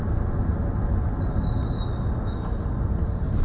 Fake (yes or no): no